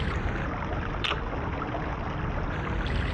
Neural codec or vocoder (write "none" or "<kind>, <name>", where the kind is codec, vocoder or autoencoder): none